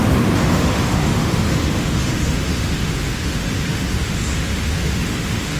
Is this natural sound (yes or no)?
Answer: no